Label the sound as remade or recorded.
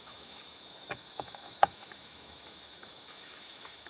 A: remade